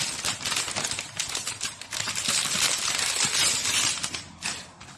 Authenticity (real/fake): real